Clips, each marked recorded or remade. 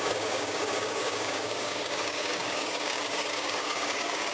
remade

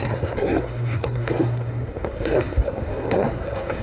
remade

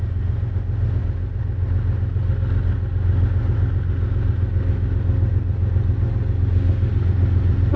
recorded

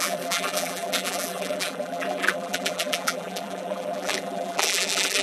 remade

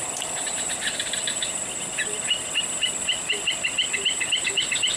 recorded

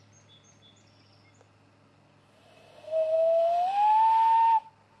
recorded